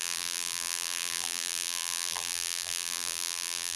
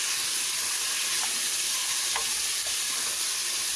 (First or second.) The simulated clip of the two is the first